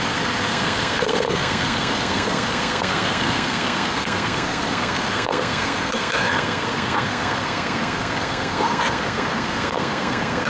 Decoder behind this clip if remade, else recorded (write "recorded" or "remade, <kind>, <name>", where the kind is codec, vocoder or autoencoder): remade, codec, SNAC